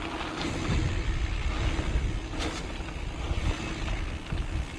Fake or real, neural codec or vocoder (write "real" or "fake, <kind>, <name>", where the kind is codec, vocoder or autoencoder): real